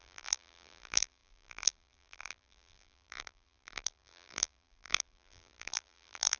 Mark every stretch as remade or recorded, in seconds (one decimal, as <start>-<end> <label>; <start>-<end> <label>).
0.0-6.4 remade